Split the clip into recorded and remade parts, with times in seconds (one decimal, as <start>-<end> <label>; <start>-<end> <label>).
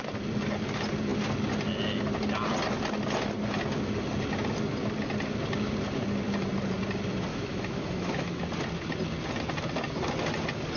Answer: 0.0-7.3 recorded; 7.3-8.4 remade; 8.4-10.8 recorded